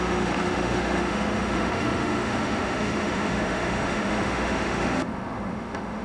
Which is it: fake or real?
fake